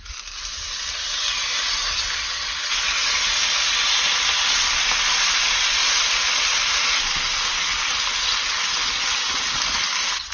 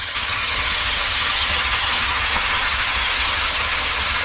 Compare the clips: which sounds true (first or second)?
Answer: first